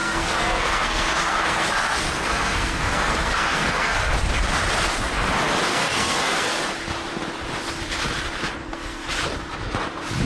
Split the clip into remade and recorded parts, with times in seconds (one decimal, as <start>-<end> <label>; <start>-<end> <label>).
0.0-4.1 remade; 4.1-5.7 recorded; 5.7-6.6 remade; 6.6-8.6 recorded; 8.6-9.1 remade; 9.1-10.2 recorded